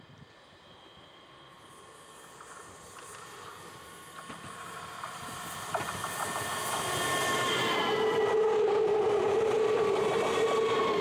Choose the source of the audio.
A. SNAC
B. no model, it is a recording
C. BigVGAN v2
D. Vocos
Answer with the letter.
B